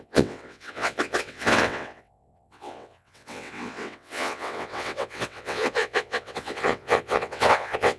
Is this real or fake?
fake